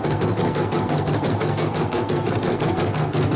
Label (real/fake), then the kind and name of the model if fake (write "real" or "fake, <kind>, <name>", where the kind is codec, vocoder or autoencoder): fake, codec, SNAC